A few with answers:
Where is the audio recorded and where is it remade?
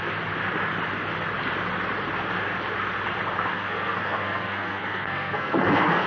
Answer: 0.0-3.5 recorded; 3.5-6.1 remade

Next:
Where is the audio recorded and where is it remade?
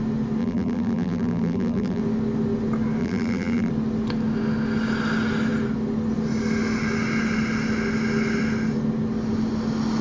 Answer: 0.0-0.4 recorded; 0.4-2.0 remade; 2.0-3.0 recorded; 3.0-3.7 remade; 3.7-10.0 recorded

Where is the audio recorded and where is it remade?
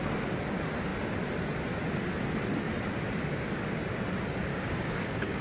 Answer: 0.0-4.5 recorded; 4.5-5.4 remade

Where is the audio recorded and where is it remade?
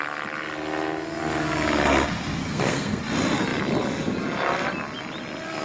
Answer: 0.0-2.4 recorded; 2.4-3.0 remade; 3.0-5.6 recorded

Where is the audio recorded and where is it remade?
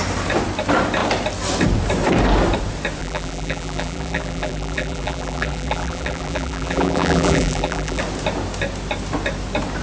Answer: 0.0-3.0 recorded; 3.0-8.0 remade; 8.0-9.8 recorded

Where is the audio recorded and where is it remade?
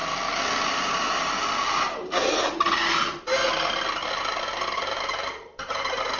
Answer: 0.0-0.7 recorded; 0.7-3.4 remade; 3.4-4.0 recorded; 4.0-6.2 remade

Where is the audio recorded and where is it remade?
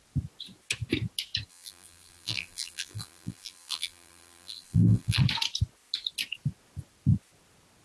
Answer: 0.0-1.5 recorded; 1.5-5.2 remade; 5.2-7.8 recorded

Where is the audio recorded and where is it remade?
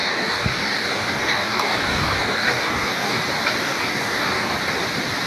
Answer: 0.0-3.2 remade; 3.2-3.6 recorded; 3.6-4.5 remade; 4.5-5.3 recorded